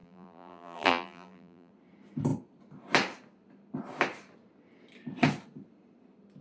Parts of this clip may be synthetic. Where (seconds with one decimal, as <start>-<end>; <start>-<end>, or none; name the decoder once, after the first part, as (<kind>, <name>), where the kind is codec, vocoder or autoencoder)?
0.0-1.7 (vocoder, BigVGAN v2)